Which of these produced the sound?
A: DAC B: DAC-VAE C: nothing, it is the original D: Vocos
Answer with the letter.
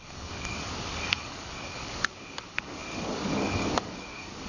A